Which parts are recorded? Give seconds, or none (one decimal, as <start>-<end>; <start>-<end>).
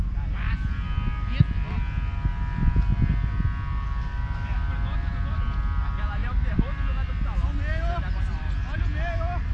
0.0-9.5